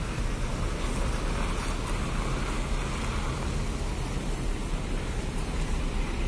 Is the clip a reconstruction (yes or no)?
no